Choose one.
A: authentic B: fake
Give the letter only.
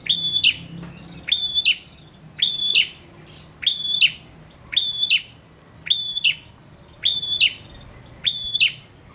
A